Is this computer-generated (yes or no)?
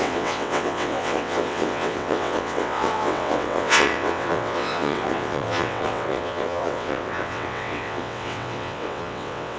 yes